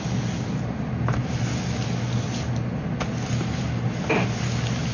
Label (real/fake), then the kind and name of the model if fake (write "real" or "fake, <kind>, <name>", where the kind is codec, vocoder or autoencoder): real